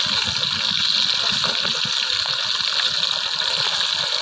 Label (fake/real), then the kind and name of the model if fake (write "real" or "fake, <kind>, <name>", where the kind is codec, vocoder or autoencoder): real